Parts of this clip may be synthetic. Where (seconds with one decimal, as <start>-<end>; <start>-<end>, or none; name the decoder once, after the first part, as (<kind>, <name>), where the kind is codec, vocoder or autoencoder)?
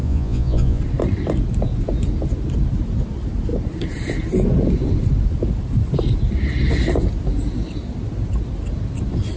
0.0-0.8 (vocoder, Vocos)